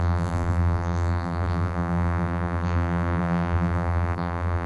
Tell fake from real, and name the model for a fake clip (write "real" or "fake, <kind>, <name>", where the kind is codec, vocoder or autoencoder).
fake, vocoder, BigVGAN v2